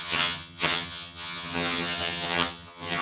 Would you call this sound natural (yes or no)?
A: no